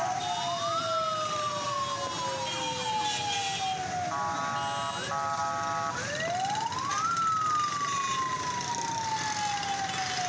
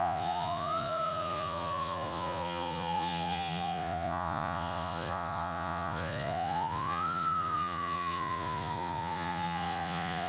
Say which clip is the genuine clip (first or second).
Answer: first